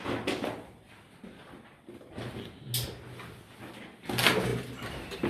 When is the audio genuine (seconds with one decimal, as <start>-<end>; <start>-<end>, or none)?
0.0-4.5